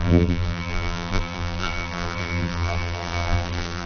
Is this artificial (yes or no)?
yes